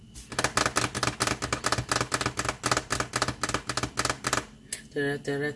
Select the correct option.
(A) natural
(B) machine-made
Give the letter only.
A